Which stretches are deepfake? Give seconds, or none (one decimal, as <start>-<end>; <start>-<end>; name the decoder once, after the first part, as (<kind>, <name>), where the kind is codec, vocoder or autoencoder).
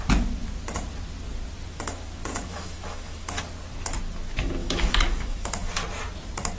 2.3-3.4 (autoencoder, DAC-VAE); 4.6-5.7